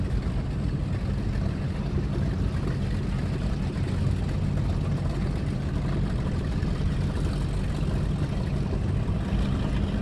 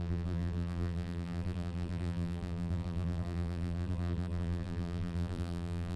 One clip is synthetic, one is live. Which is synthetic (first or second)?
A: second